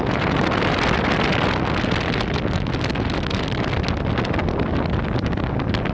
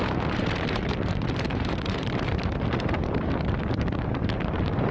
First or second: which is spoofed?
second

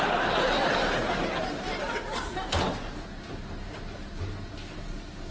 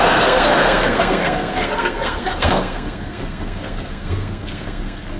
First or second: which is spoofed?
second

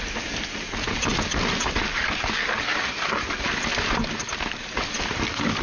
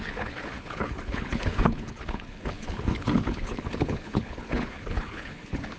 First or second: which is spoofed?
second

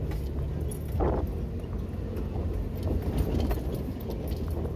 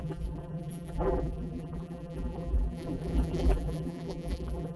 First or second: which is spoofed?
second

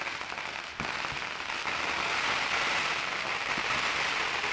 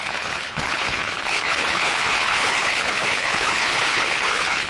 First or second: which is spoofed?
second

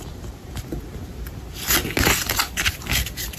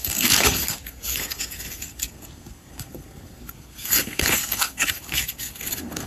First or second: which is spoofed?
second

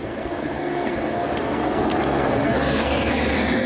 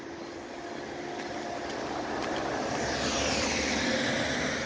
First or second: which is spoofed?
first